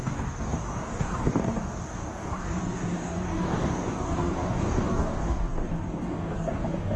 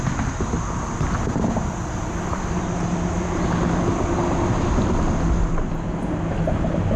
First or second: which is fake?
first